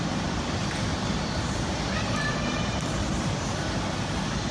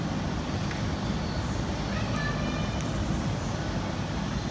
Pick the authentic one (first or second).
second